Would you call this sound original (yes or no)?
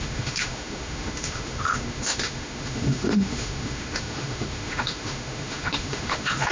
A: no